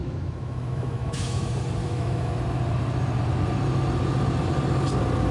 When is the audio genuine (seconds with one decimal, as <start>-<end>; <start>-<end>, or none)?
1.4-1.8; 2.4-5.3